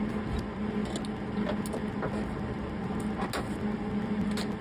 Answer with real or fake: real